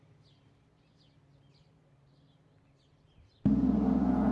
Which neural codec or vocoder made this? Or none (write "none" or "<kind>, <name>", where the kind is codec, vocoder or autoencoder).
none